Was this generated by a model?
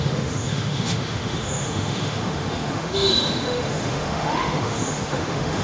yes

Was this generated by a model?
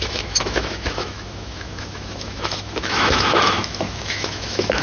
yes